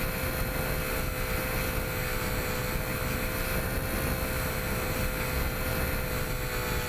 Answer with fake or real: real